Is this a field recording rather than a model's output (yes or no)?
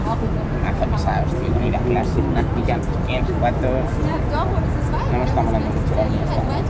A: yes